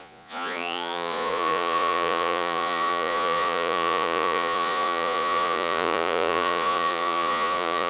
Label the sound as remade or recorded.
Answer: remade